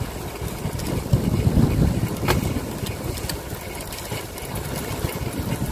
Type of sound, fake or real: real